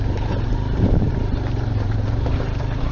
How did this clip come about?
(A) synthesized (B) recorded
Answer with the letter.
A